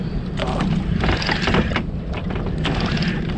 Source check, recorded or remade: recorded